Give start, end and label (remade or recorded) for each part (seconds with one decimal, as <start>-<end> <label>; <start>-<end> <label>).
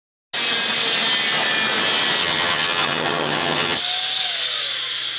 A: 0.0-2.2 recorded; 2.2-3.8 remade; 3.8-5.2 recorded